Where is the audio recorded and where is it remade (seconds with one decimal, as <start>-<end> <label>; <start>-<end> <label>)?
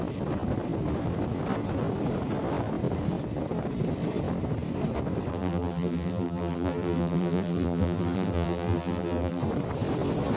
0.0-5.3 recorded; 5.3-9.4 remade; 9.4-10.4 recorded